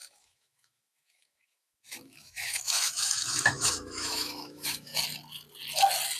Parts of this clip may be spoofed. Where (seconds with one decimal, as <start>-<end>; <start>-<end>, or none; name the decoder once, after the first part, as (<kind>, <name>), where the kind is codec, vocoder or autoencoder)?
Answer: 0.0-4.9 (autoencoder, DAC-VAE)